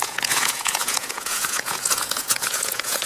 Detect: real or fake fake